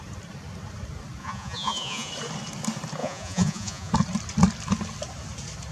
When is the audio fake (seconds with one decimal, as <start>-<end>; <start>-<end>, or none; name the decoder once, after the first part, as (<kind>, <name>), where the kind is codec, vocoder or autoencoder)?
1.2-2.1 (vocoder, Vocos); 3.0-3.9

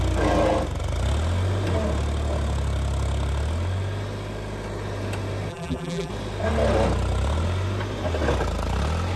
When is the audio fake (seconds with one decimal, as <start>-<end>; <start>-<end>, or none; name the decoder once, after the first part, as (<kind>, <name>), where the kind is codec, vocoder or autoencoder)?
5.5-6.1 (vocoder, BigVGAN v2)

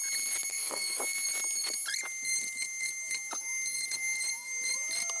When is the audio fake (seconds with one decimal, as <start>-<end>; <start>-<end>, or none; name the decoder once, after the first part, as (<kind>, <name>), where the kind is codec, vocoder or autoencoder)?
0.5-1.0 (autoencoder, DAC-VAE)

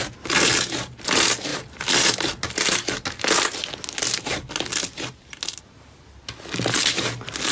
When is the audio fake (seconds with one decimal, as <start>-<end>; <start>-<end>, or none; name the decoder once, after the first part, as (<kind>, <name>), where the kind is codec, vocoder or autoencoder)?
none

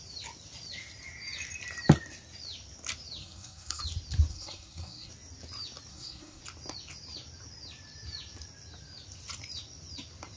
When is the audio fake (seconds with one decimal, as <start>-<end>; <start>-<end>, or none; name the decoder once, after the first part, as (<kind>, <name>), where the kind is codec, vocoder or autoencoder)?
3.2-3.8 (codec, SNAC); 4.3-5.1; 5.9-6.4

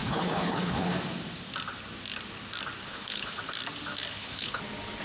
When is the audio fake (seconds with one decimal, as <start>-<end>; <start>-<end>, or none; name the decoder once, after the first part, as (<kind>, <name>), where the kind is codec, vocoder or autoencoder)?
0.0-0.9 (codec, HILCodec); 2.8-3.4; 4.1-4.6

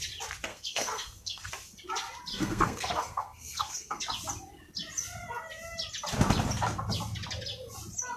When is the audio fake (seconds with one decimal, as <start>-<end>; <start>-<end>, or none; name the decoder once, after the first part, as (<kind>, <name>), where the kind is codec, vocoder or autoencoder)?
0.5-1.5 (codec, SNAC); 2.3-4.0

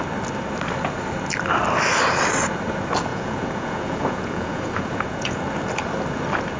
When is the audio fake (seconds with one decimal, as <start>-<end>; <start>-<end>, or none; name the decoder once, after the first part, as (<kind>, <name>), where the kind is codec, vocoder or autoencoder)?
3.1-5.4 (vocoder, Vocos)